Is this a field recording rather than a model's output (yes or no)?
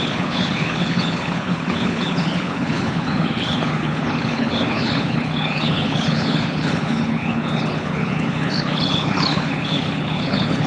no